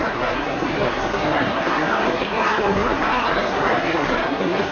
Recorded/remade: remade